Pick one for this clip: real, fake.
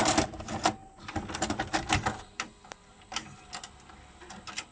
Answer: fake